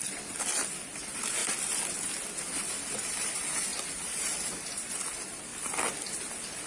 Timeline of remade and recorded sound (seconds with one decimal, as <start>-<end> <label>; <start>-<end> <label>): 0.0-1.4 remade; 1.4-2.3 recorded; 2.3-5.5 remade; 5.5-6.1 recorded; 6.1-6.7 remade